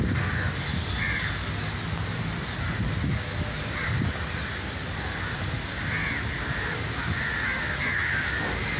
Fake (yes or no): no